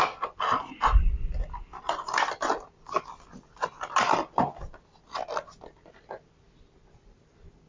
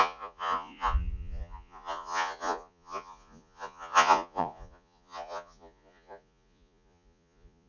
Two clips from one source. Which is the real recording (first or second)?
first